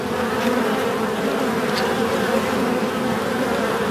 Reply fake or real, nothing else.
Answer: real